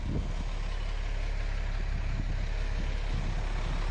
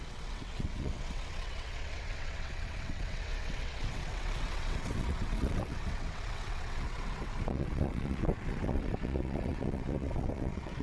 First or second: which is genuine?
first